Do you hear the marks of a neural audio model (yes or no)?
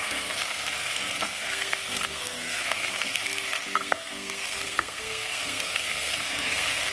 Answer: yes